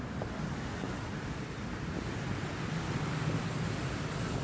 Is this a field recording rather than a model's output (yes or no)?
yes